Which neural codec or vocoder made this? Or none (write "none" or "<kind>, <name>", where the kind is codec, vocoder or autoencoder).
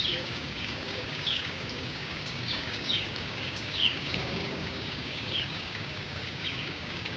codec, DAC